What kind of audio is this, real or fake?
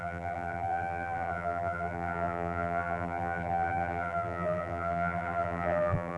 fake